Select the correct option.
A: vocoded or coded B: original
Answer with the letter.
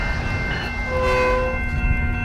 B